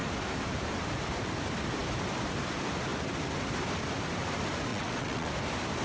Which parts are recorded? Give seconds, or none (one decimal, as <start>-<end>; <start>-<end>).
0.0-4.7; 5.3-5.8